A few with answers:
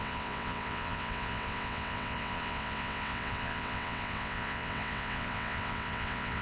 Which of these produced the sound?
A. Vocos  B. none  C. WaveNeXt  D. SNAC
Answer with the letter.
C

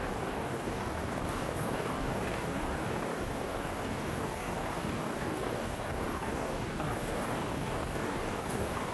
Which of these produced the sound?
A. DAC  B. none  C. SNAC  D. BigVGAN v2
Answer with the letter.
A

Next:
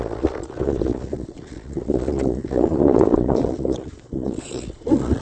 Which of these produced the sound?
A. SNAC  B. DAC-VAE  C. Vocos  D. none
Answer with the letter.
C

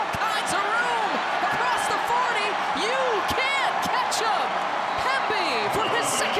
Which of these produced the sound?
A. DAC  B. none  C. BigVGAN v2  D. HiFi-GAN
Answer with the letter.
B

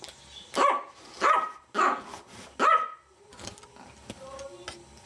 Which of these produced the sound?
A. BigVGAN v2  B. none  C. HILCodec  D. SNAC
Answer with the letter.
B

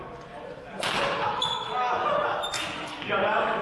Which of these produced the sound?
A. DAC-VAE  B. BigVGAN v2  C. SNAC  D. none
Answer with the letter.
D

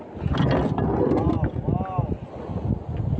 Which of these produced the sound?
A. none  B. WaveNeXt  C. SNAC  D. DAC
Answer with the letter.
A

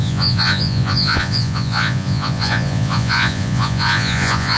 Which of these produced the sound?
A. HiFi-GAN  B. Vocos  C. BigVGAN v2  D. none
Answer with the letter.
B